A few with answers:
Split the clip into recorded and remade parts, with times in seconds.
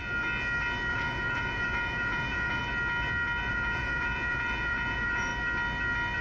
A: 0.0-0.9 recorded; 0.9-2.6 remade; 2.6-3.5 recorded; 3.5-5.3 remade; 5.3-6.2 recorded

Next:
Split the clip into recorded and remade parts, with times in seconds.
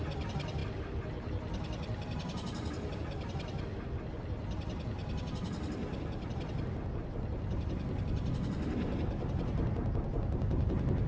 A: 0.0-11.1 recorded